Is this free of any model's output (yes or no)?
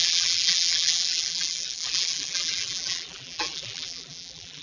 no